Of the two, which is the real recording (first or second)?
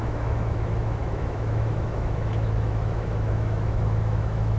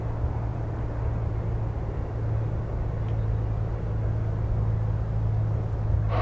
second